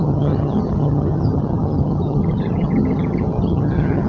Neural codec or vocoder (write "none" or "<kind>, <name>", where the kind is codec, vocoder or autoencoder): vocoder, HiFi-GAN